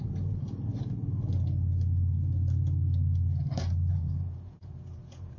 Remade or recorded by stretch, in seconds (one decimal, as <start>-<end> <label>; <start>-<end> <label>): 0.0-0.7 remade; 0.7-3.9 recorded; 3.9-5.4 remade